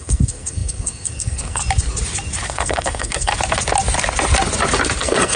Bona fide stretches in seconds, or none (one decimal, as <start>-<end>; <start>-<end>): 1.6-2.5; 3.3-5.0